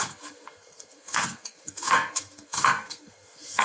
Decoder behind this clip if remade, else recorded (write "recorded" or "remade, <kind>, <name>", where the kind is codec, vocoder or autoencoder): remade, codec, SNAC